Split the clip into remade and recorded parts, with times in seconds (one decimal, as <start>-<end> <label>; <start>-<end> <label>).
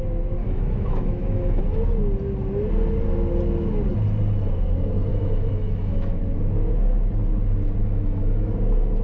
0.0-0.4 recorded; 0.4-1.6 remade; 1.6-5.1 recorded; 5.1-6.2 remade; 6.2-7.8 recorded; 7.8-8.5 remade; 8.5-9.0 recorded